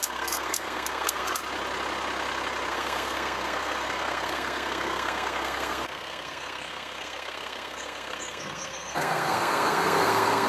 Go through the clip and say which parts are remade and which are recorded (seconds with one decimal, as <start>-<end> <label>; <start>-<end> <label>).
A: 0.0-1.4 remade; 1.4-2.7 recorded; 2.7-10.5 remade